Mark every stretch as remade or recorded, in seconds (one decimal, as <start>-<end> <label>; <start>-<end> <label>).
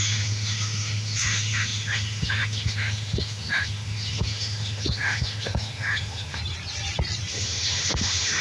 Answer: 0.0-6.4 remade; 6.4-7.3 recorded; 7.3-8.4 remade